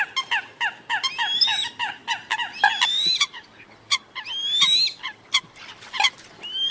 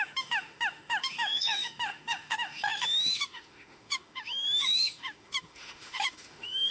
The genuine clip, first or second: first